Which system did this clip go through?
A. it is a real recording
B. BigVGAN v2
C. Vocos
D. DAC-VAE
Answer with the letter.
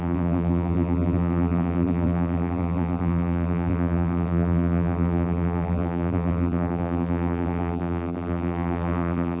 B